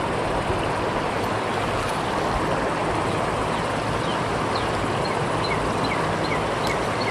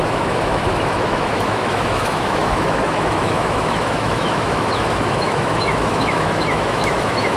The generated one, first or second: second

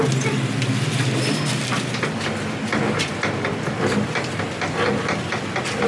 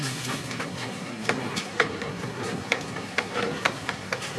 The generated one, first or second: second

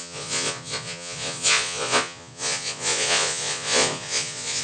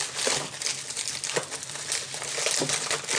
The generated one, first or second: first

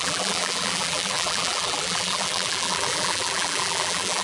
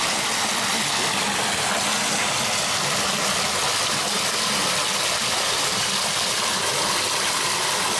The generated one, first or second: first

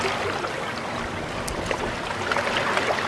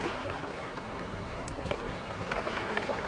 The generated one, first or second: second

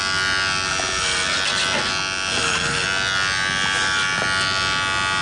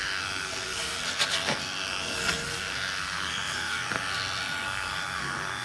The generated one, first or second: second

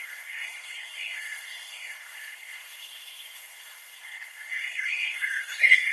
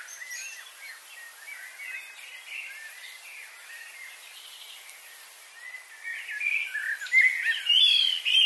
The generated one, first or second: first